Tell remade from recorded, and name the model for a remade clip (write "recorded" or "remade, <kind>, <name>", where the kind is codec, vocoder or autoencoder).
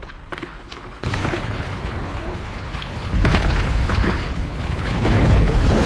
remade, codec, HILCodec